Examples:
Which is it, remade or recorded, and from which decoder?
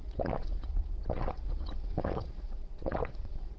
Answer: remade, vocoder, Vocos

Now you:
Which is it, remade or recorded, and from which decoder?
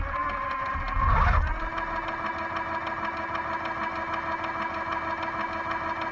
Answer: recorded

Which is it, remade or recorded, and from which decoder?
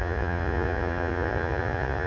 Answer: remade, vocoder, Vocos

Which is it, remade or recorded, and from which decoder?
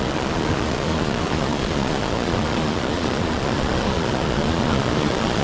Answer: remade, vocoder, Vocos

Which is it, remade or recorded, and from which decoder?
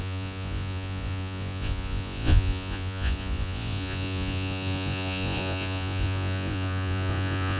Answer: remade, vocoder, Vocos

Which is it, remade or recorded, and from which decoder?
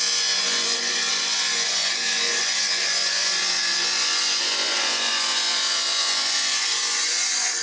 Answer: remade, vocoder, Vocos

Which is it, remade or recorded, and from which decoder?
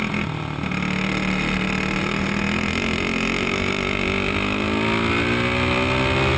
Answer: recorded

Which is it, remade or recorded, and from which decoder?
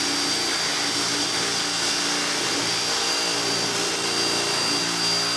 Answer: recorded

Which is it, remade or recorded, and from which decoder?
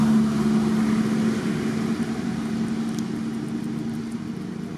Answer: recorded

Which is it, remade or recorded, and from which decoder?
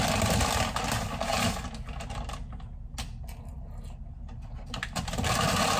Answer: recorded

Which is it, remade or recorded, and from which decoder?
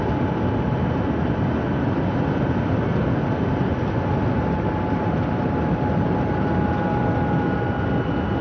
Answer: recorded